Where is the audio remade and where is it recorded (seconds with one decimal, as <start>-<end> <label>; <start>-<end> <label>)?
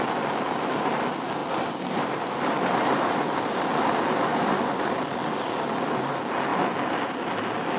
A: 0.0-1.4 recorded; 1.4-3.4 remade; 3.4-4.3 recorded; 4.3-4.9 remade; 4.9-7.8 recorded